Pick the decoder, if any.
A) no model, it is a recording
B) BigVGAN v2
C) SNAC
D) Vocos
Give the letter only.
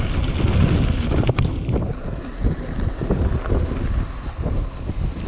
A